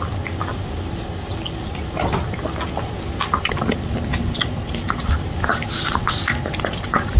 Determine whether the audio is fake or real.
real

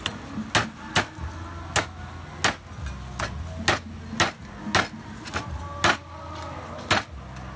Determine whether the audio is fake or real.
real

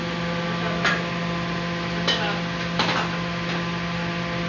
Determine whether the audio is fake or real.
real